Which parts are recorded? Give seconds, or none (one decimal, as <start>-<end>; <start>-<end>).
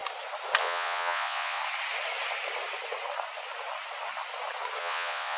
0.0-0.6; 1.6-4.8